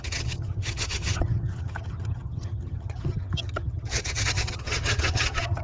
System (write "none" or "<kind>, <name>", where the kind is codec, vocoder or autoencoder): vocoder, HiFi-GAN